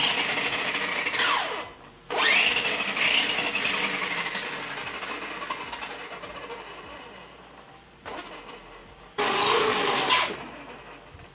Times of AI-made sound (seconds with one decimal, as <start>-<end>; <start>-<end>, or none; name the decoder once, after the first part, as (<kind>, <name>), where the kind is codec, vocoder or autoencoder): none